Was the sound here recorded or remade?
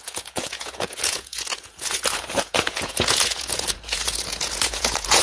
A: remade